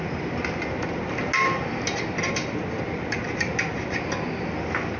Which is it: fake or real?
real